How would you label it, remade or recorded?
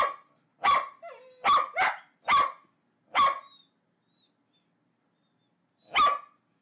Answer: recorded